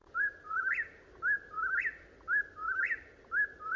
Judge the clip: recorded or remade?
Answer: recorded